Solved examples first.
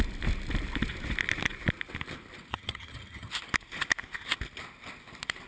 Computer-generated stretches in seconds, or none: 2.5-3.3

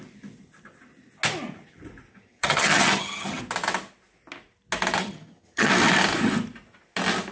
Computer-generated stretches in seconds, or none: 2.1-3.4; 5.0-5.7

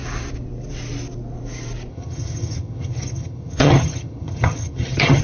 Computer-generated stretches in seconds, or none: 1.9-5.2

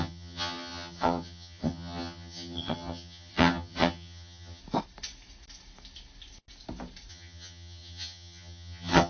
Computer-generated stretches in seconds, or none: 0.0-4.6; 7.1-9.1

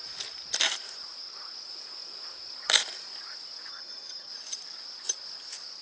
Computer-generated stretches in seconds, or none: 3.7-4.3

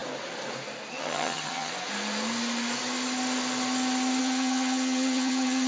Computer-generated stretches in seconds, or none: 0.9-1.7; 4.2-5.7

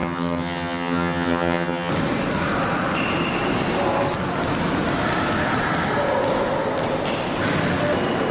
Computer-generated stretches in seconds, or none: 0.0-1.9

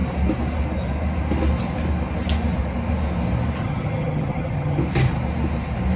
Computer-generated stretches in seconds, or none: 3.6-4.8